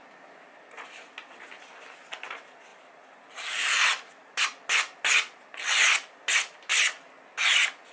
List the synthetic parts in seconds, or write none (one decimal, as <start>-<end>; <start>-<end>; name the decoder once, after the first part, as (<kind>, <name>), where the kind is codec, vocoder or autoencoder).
none